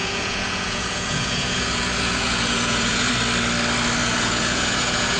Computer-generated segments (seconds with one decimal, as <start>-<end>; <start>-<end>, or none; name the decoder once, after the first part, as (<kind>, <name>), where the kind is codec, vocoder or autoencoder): 0.0-3.1 (vocoder, Vocos); 4.0-5.2